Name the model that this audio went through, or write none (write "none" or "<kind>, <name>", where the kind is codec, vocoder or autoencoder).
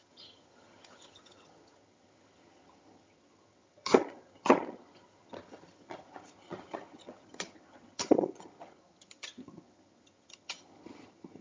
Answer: vocoder, HiFi-GAN